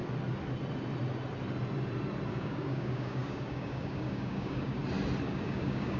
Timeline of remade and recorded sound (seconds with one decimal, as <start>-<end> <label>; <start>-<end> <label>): 0.0-2.3 recorded; 2.3-4.8 remade; 4.8-5.3 recorded; 5.3-6.0 remade

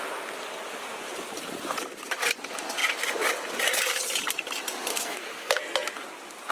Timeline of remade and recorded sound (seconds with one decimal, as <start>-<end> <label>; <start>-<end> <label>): 0.0-4.9 recorded; 4.9-5.6 remade; 5.6-6.5 recorded

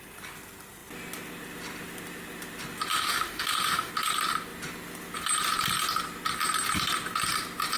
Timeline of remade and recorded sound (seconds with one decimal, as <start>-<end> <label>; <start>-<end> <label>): 0.0-2.9 recorded; 2.9-3.9 remade; 3.9-7.8 recorded

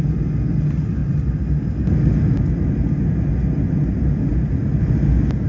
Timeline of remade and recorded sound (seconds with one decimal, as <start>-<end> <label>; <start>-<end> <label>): 0.0-5.5 recorded

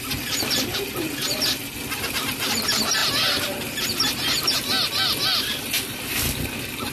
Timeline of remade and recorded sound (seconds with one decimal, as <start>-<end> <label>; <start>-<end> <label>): 0.0-6.9 recorded

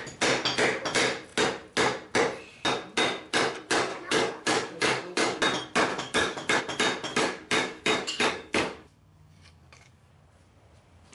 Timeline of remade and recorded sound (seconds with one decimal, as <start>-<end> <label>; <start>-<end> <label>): 0.0-3.9 recorded; 3.9-5.4 remade; 5.4-5.9 recorded; 5.9-6.6 remade; 6.6-7.1 recorded; 7.1-10.1 remade; 10.1-11.1 recorded